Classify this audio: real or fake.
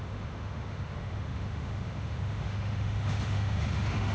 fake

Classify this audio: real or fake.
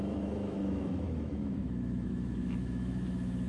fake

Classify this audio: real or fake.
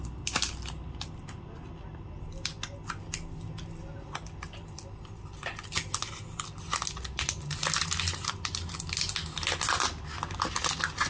real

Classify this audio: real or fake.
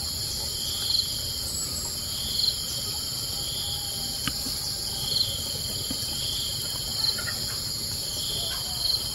real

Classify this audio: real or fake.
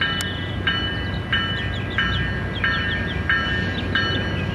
real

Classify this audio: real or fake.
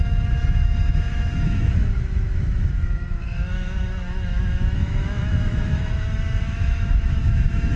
fake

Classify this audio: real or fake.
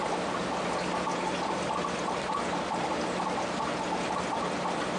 real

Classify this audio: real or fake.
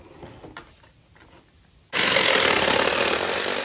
real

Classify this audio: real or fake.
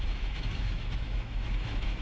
fake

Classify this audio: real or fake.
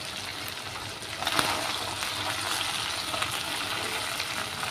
real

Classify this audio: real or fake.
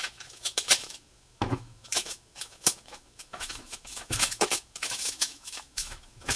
fake